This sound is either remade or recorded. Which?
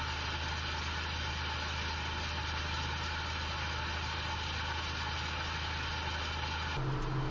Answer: recorded